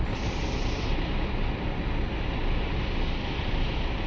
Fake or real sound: real